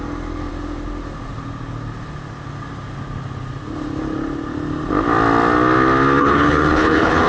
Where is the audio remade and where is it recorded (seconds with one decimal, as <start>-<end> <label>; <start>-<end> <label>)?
0.0-6.2 recorded; 6.2-7.3 remade